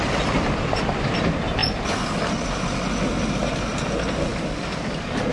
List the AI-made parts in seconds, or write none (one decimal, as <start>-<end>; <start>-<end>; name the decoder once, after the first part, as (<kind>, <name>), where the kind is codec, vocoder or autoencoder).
4.3-5.3 (codec, DAC)